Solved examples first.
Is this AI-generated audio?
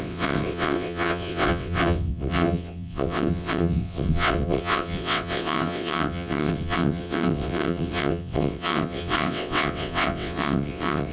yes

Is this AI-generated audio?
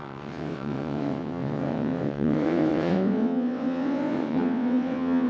yes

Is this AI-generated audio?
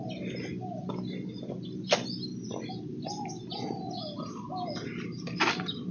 no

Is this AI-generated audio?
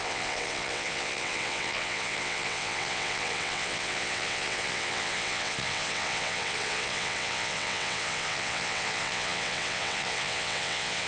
yes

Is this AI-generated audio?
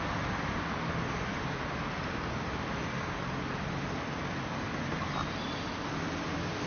no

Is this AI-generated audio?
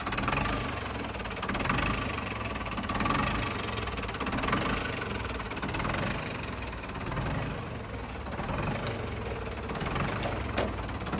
no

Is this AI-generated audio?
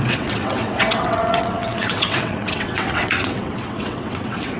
yes